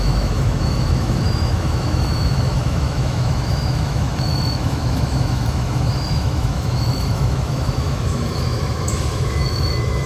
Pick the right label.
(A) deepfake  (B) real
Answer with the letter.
A